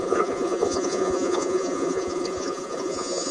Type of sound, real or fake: fake